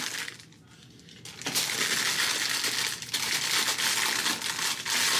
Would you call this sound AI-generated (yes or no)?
no